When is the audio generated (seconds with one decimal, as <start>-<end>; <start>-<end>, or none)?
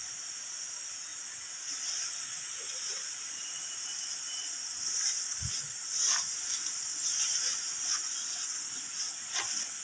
0.0-9.8